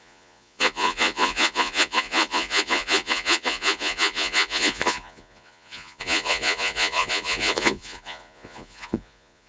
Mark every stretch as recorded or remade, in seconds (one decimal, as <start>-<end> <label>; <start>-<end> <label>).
0.0-9.5 remade